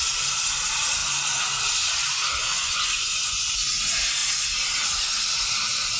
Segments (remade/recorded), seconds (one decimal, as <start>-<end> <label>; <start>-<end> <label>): 0.0-2.5 recorded; 2.5-3.4 remade; 3.4-6.0 recorded